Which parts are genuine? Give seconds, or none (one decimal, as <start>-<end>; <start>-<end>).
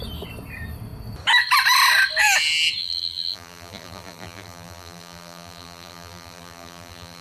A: 0.0-2.8